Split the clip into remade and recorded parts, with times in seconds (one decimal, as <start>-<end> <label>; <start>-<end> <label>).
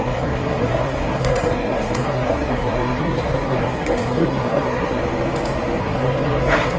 0.0-5.0 remade; 5.0-5.8 recorded; 5.8-6.8 remade